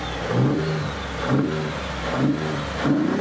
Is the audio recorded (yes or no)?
yes